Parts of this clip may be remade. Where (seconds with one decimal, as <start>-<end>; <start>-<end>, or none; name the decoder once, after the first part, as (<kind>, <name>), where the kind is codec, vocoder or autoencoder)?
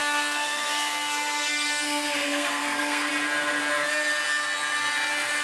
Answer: 0.0-3.1 (codec, SNAC)